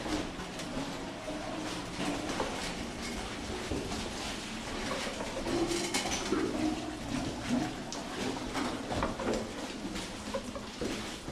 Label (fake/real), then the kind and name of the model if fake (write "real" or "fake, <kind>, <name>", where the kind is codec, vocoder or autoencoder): real